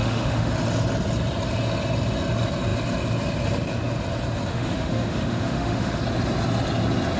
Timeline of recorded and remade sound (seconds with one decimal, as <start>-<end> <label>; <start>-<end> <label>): 0.0-0.5 remade; 0.5-4.5 recorded; 4.5-6.0 remade; 6.0-7.2 recorded